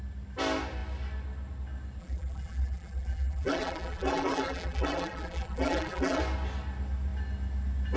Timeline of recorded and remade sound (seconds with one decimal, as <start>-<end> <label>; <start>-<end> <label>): 0.0-2.0 recorded; 2.0-6.2 remade; 6.2-8.0 recorded